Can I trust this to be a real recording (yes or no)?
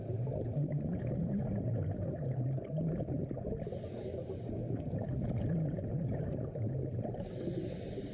yes